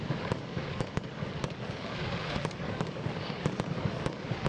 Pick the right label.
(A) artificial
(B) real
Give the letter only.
A